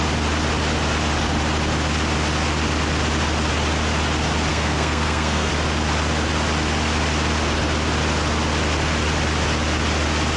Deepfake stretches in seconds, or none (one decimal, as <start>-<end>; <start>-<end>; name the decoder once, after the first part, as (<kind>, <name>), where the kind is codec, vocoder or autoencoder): 4.5-5.5 (codec, SNAC)

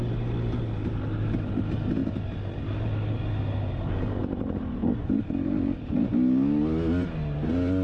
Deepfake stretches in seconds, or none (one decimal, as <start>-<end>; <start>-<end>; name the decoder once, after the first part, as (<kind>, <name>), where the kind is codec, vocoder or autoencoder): none

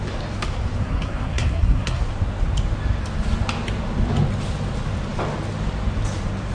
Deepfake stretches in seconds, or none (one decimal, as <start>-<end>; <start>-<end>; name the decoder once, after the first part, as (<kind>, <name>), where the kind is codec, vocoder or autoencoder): 0.8-2.0 (codec, SNAC)

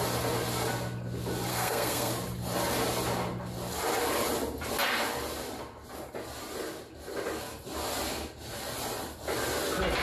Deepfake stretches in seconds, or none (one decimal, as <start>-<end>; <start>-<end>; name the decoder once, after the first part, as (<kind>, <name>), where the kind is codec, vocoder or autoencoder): 1.5-2.1 (codec, SNAC)

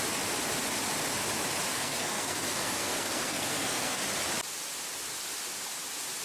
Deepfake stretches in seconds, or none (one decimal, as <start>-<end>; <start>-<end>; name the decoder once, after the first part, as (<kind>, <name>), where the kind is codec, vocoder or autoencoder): 1.7-4.0 (codec, SNAC)